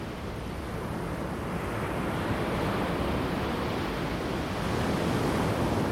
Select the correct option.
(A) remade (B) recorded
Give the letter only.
B